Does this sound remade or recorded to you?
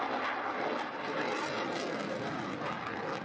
recorded